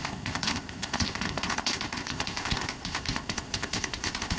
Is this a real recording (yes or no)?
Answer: no